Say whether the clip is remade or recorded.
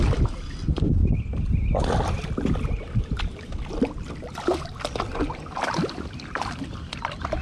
recorded